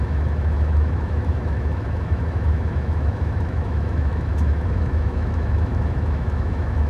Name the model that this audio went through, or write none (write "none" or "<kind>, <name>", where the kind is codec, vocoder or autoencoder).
autoencoder, DAC-VAE